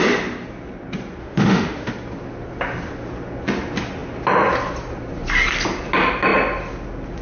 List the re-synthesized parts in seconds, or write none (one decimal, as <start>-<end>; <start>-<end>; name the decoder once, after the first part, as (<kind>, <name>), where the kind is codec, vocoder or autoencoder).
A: 1.2-1.9 (autoencoder, DAC-VAE)